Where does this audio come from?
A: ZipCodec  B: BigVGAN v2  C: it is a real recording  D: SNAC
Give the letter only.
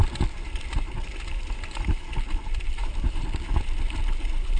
B